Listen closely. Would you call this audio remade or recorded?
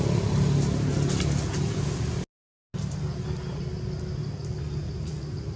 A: recorded